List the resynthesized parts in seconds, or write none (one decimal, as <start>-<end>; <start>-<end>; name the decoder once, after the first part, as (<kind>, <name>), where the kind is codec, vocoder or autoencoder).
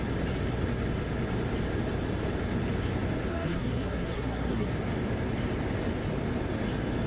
3.3-4.7 (codec, SNAC)